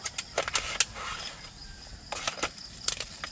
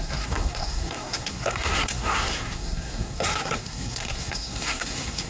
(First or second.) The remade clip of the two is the second